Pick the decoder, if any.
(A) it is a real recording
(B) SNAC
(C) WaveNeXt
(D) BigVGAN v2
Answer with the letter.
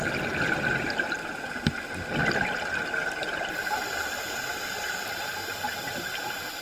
A